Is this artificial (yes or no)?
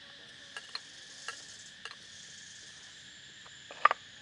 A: no